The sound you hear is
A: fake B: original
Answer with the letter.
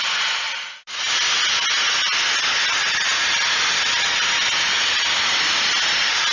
B